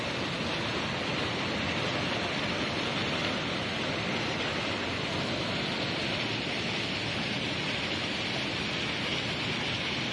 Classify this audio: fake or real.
real